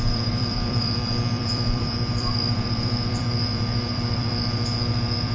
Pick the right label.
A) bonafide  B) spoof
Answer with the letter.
B